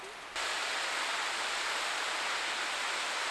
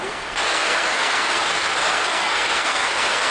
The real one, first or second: first